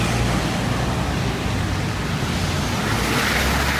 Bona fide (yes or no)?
yes